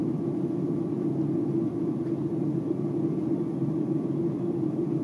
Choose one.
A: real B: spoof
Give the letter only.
A